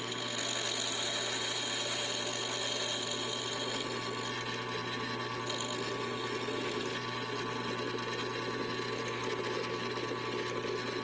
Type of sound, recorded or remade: recorded